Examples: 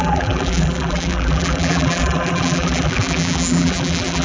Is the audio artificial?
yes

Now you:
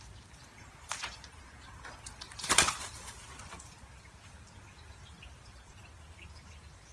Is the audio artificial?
yes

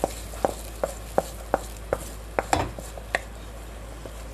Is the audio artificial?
no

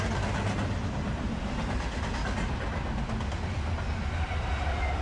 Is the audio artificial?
no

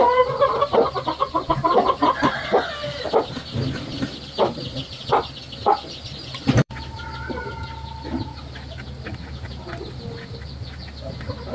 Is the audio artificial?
yes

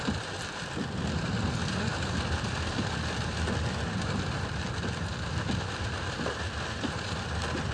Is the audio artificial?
yes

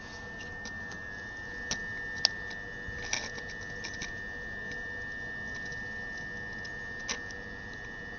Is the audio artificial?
no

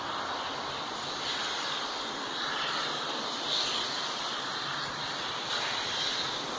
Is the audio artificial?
no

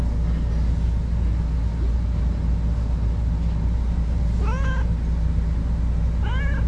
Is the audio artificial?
no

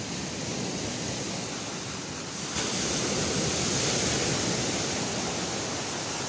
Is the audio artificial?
no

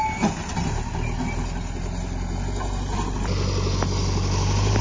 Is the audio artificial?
no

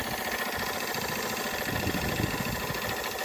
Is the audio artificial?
no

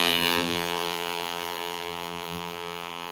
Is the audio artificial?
yes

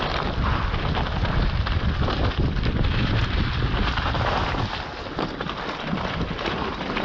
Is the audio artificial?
no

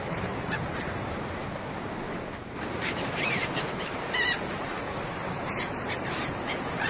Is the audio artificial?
yes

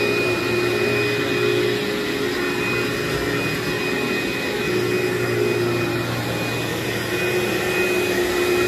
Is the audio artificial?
no